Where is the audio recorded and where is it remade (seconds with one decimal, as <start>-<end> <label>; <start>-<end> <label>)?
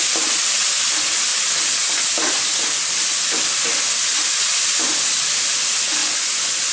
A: 0.0-6.0 recorded; 6.0-6.7 remade